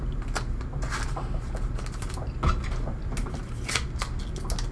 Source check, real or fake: real